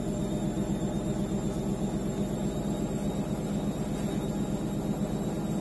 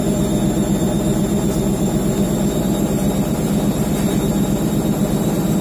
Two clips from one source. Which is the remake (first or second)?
second